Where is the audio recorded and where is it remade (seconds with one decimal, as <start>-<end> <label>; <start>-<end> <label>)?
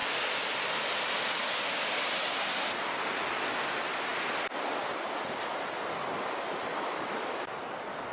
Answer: 0.0-8.1 recorded